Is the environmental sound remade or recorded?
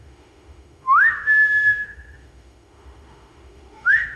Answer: remade